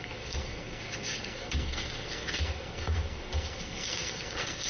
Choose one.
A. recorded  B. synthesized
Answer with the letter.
B